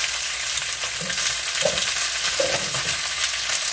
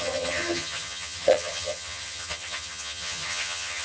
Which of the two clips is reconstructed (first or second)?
second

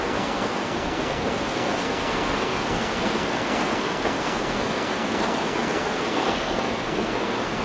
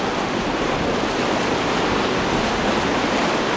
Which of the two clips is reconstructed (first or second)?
first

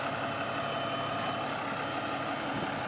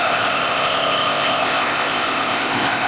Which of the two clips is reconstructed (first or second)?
second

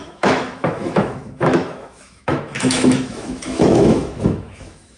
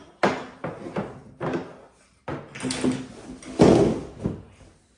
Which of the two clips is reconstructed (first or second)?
first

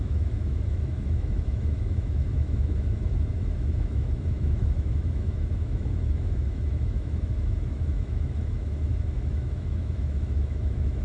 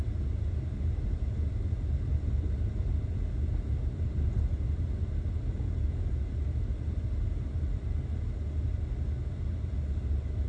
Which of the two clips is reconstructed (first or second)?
first